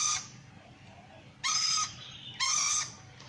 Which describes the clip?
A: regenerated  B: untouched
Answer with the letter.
A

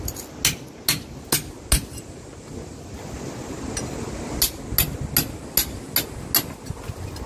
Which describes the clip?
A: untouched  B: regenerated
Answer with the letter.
A